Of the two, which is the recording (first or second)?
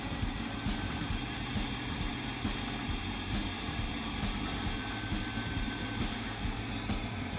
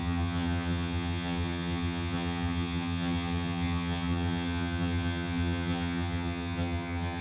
first